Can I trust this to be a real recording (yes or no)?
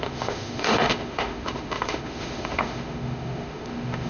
no